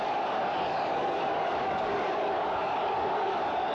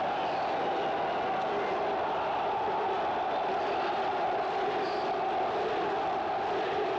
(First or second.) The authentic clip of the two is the second